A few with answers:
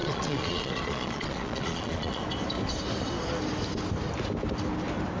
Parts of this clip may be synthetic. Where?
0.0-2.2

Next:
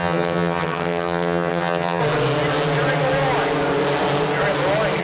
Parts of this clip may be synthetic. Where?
0.0-2.0

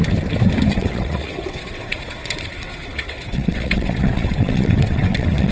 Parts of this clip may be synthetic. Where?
0.7-5.5